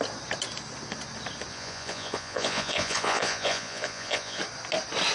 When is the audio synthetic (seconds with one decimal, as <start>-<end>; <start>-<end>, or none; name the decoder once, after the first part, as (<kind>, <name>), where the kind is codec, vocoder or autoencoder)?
1.5-4.4 (vocoder, Vocos)